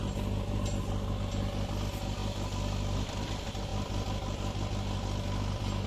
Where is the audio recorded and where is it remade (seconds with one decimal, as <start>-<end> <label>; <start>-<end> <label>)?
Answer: 0.0-5.9 recorded